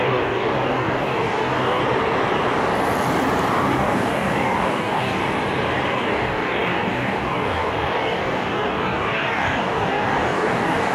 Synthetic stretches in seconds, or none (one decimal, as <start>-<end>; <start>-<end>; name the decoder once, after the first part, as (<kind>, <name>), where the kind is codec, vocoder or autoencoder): 0.0-1.8 (codec, DAC); 3.5-5.2; 5.9-10.9